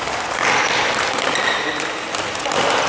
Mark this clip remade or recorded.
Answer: recorded